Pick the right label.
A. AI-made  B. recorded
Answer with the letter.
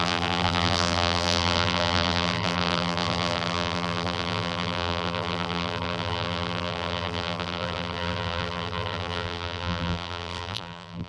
A